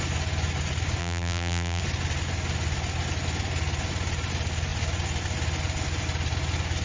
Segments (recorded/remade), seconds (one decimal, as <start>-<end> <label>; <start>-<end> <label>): 0.0-1.0 recorded; 1.0-1.8 remade; 1.8-6.8 recorded